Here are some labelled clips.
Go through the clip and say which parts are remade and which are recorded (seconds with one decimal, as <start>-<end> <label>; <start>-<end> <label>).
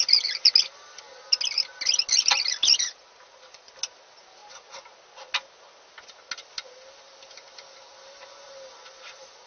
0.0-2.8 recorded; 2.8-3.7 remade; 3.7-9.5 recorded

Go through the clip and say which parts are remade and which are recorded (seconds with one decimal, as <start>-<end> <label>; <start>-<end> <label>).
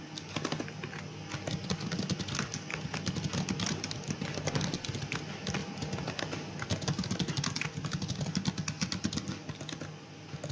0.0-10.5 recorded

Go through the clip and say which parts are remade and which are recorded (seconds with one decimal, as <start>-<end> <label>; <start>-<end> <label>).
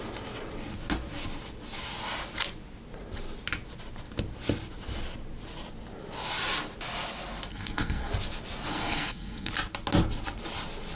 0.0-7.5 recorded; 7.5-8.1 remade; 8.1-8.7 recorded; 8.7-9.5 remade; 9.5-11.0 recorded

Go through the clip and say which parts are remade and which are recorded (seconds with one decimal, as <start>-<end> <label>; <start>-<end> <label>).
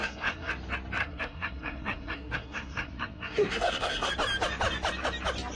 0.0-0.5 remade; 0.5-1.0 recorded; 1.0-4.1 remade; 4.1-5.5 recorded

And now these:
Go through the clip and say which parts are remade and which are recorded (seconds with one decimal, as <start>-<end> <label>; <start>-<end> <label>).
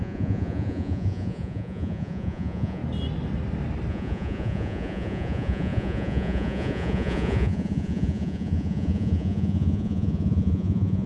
0.0-2.8 remade; 2.8-3.9 recorded; 3.9-11.1 remade